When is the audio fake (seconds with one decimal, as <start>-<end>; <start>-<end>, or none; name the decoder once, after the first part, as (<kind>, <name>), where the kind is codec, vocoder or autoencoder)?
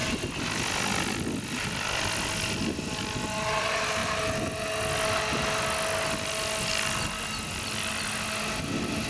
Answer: none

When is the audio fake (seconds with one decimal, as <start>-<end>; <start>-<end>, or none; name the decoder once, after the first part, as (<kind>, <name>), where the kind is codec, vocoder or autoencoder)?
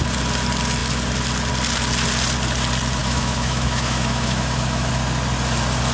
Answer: 3.0-4.9 (autoencoder, DAC-VAE)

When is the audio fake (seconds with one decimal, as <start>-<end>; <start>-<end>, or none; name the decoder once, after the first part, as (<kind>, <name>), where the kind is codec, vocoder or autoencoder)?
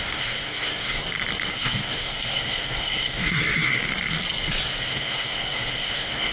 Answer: 0.0-1.0 (codec, SNAC); 1.5-3.8; 4.5-6.3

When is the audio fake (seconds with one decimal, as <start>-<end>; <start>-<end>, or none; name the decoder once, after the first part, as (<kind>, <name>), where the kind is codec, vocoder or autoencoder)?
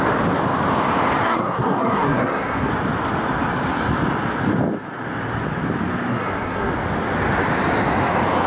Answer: 1.2-2.7 (codec, SNAC); 6.1-6.7